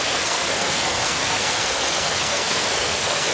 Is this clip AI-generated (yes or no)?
yes